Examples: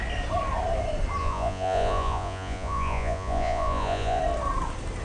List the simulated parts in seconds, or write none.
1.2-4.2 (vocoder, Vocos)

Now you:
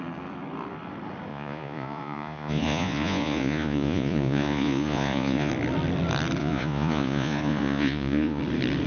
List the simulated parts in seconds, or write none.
1.3-5.5 (vocoder, Vocos); 6.4-8.4

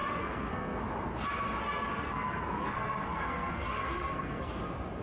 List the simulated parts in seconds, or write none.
0.0-0.8 (codec, SNAC); 1.6-4.6

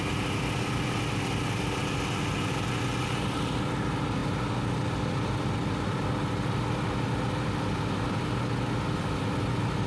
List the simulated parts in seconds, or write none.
none

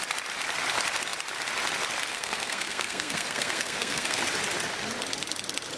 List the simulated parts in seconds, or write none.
2.1-4.2 (codec, SNAC)